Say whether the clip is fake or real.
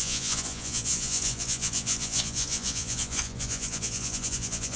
fake